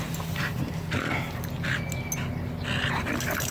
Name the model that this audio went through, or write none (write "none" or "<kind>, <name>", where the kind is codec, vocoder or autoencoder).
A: none